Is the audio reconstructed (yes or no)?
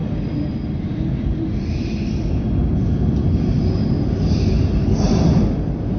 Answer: no